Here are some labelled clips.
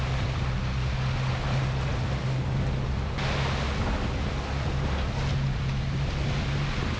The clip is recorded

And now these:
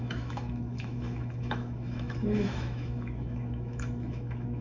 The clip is remade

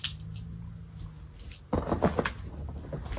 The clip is recorded